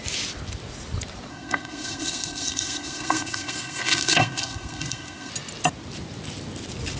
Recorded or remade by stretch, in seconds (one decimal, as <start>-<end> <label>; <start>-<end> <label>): 0.0-1.3 recorded; 1.3-5.3 remade; 5.3-7.0 recorded